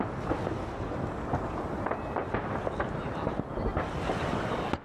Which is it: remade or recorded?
recorded